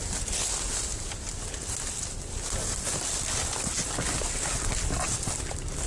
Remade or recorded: recorded